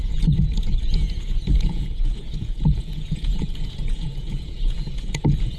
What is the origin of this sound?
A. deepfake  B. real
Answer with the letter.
A